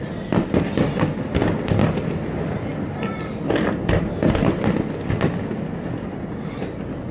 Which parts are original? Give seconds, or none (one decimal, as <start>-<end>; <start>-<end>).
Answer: 0.0-7.1